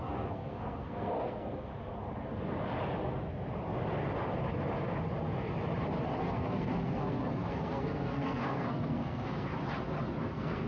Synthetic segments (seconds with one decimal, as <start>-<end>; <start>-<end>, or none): 0.0-1.7; 6.2-9.5; 10.2-10.7